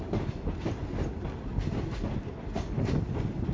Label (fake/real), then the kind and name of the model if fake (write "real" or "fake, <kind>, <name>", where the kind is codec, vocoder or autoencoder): real